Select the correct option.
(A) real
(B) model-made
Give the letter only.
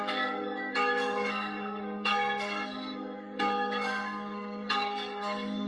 B